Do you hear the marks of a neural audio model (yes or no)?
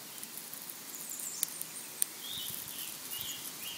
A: no